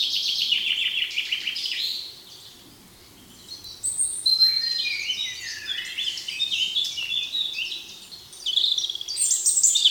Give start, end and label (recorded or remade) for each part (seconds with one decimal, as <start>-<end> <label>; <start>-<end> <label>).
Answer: 0.0-0.9 recorded; 0.9-2.5 remade; 2.5-4.1 recorded; 4.1-4.8 remade; 4.8-9.9 recorded